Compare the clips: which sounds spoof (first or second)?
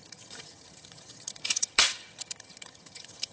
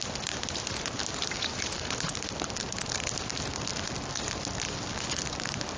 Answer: first